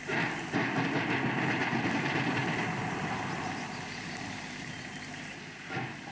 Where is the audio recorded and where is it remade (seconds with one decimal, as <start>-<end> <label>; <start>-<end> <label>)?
0.0-6.1 recorded

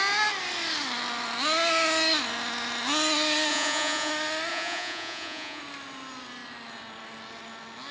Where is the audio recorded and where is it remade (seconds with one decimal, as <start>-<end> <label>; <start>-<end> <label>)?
0.0-3.5 recorded; 3.5-4.1 remade; 4.1-4.5 recorded; 4.5-5.6 remade; 5.6-7.9 recorded

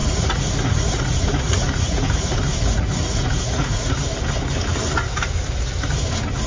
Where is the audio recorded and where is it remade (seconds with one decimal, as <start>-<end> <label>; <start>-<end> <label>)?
0.0-3.9 remade; 3.9-6.5 recorded

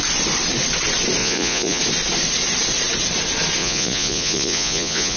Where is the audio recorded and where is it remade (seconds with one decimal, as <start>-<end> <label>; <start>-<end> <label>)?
0.0-1.2 recorded; 1.2-1.8 remade; 1.8-3.6 recorded; 3.6-5.2 remade